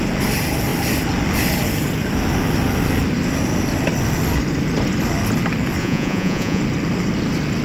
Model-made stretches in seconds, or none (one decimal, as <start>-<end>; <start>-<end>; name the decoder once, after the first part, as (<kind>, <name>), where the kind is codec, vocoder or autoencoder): 5.8-6.6 (vocoder, Vocos)